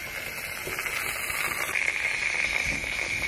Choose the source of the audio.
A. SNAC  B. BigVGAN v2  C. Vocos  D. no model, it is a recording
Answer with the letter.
D